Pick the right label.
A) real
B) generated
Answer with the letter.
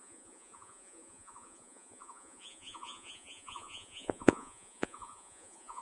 B